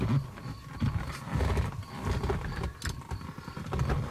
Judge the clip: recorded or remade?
recorded